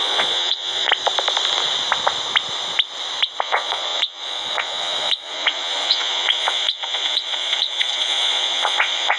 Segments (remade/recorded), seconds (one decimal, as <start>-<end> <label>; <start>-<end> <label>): 0.0-0.9 remade; 0.9-3.4 recorded; 3.4-9.2 remade